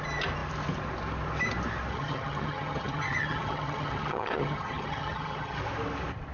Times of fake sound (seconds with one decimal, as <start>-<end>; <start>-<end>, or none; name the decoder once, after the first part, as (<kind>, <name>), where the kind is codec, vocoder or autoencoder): 1.9-5.6 (vocoder, HiFi-GAN)